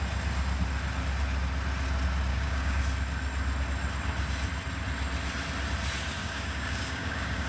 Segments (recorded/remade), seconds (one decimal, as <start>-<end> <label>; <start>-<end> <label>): 0.0-2.3 recorded; 2.3-2.8 remade; 2.8-6.2 recorded; 6.2-7.5 remade